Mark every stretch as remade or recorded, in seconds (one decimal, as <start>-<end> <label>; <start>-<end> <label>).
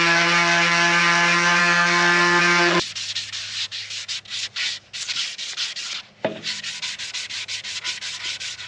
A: 0.0-1.6 recorded; 1.6-2.4 remade; 2.4-8.7 recorded